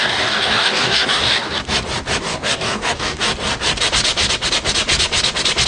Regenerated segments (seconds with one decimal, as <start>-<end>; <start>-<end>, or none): 0.0-1.6; 2.2-3.3